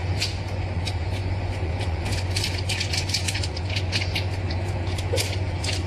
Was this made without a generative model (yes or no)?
no